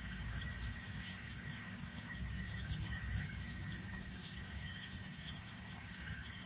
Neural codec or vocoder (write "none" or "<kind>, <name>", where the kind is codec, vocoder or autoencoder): codec, DAC